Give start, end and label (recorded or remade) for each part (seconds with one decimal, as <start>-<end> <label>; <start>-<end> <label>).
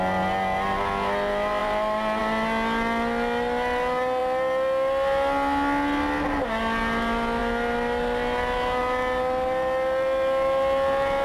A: 0.0-11.2 recorded